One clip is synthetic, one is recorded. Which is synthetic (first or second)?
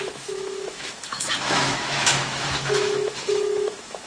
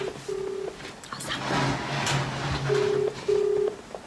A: first